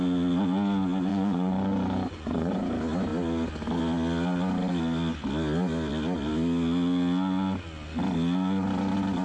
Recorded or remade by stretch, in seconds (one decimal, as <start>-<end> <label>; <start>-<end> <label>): 0.0-1.1 recorded; 1.1-2.6 remade; 2.6-9.2 recorded